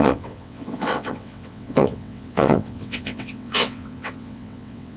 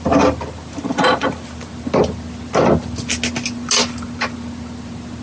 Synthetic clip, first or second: first